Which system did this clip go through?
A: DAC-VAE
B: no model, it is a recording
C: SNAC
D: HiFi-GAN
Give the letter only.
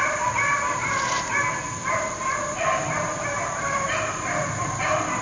B